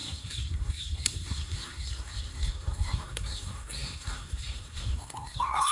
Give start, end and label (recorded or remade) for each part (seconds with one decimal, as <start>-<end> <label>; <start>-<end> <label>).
0.0-5.7 remade